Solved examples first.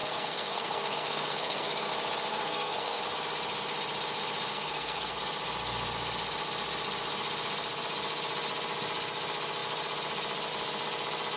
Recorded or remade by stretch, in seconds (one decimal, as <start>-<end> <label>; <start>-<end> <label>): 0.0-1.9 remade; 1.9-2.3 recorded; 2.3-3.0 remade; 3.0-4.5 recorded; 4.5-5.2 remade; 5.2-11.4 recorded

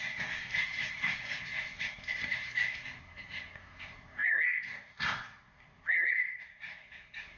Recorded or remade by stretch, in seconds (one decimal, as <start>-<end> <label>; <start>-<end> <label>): 0.0-7.4 remade

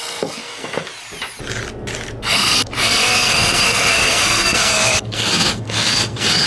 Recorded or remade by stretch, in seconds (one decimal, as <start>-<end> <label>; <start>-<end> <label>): 0.0-0.9 remade; 0.9-2.2 recorded; 2.2-6.5 remade

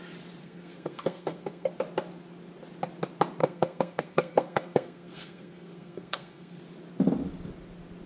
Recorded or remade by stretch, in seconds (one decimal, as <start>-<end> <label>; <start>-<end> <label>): 0.0-0.4 recorded; 0.4-1.7 remade; 1.7-3.4 recorded; 3.4-6.6 remade; 6.6-8.1 recorded